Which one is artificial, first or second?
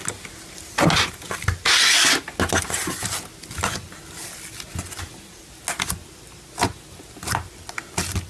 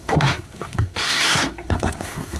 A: second